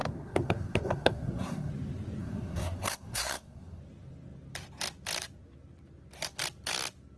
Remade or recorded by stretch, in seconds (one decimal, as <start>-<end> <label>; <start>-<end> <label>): 0.0-1.7 remade; 1.7-2.2 recorded; 2.2-3.8 remade; 3.8-7.2 recorded